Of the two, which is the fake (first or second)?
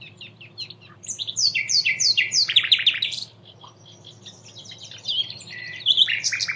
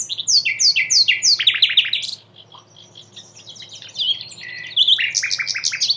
first